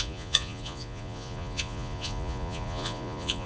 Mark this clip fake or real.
fake